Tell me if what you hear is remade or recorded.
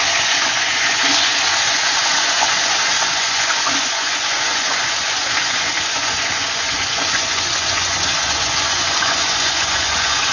remade